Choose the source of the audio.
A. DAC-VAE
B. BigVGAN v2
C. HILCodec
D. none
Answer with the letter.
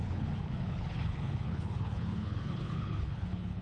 C